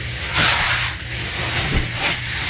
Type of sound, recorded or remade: recorded